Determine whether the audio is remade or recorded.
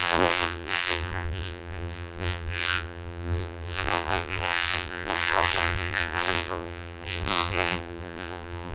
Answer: remade